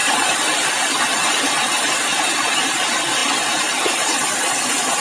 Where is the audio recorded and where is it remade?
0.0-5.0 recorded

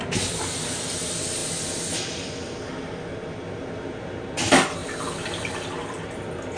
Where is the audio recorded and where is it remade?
0.0-6.6 recorded

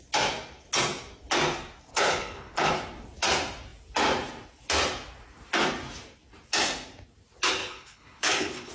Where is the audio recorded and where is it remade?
0.0-1.9 recorded; 1.9-2.7 remade; 2.7-7.6 recorded; 7.6-8.7 remade

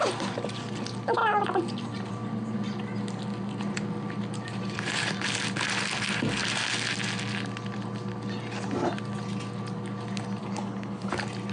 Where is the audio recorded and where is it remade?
0.0-10.4 recorded; 10.4-11.1 remade; 11.1-11.5 recorded